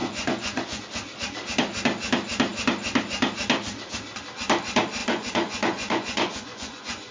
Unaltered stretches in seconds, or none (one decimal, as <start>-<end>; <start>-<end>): 0.8-5.0